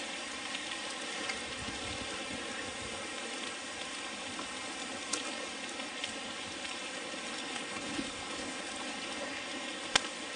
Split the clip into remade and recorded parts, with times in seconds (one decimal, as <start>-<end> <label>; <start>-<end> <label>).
0.0-7.4 recorded; 7.4-8.7 remade; 8.7-10.4 recorded